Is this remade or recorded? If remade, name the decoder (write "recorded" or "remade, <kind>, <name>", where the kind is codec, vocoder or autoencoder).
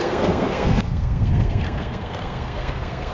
remade, codec, SNAC